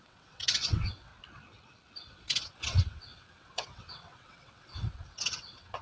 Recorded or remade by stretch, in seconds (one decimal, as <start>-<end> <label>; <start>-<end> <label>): 0.0-1.1 remade; 1.1-2.1 recorded; 2.1-5.8 remade